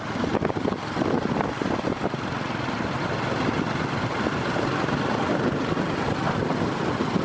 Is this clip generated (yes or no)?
no